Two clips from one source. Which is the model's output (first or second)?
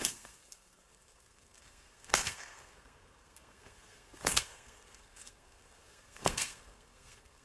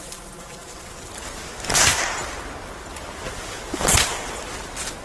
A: first